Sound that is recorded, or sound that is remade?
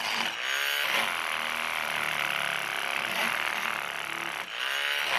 recorded